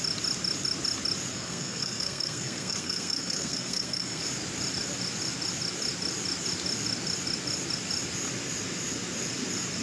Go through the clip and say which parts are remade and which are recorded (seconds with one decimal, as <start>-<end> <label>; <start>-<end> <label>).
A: 0.0-1.3 recorded; 1.3-4.2 remade; 4.2-9.8 recorded